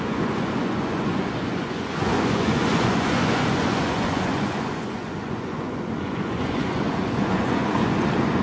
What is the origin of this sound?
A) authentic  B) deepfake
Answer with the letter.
B